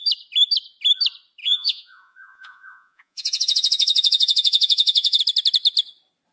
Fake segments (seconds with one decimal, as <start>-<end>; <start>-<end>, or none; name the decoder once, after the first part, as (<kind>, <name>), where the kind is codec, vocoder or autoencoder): 1.4-5.2 (vocoder, Vocos)